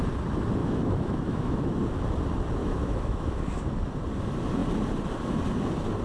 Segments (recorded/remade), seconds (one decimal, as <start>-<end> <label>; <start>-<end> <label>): 0.0-0.6 recorded; 0.6-1.7 remade; 1.7-2.6 recorded; 2.6-3.7 remade; 3.7-6.0 recorded

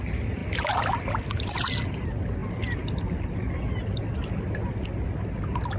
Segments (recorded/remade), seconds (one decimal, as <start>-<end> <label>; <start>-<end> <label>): 0.0-5.8 recorded

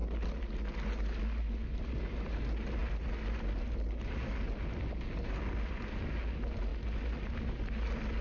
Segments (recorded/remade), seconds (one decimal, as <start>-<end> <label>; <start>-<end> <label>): 0.0-8.2 recorded

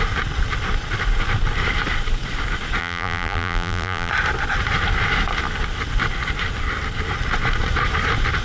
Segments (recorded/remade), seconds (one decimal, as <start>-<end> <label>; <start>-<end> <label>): 0.0-2.8 recorded; 2.8-4.1 remade; 4.1-8.4 recorded